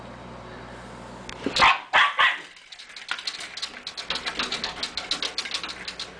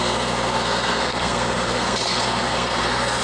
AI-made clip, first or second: second